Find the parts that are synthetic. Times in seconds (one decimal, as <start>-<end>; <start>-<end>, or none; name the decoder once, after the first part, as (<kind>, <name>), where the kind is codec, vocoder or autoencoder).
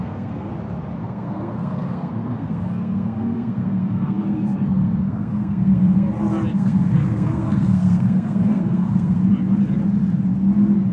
0.0-0.5 (codec, SNAC); 1.0-6.1; 6.5-9.3